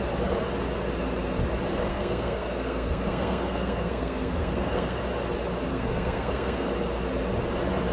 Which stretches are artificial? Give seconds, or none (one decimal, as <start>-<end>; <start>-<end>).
1.9-5.0; 5.7-6.7